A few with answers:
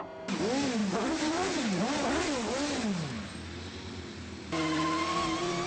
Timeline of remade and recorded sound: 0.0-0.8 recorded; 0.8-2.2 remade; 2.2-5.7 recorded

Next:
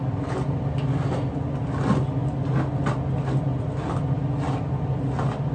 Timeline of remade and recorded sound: 0.0-5.5 recorded

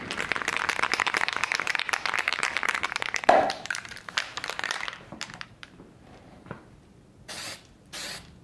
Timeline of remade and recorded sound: 0.0-2.3 recorded; 2.3-6.6 remade; 6.6-8.4 recorded